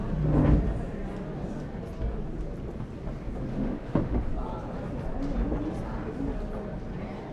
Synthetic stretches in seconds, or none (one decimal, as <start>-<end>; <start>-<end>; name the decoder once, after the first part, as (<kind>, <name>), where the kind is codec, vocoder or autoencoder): 3.5-4.3 (autoencoder, DAC-VAE)